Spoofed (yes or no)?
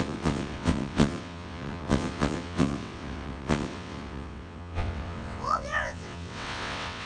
yes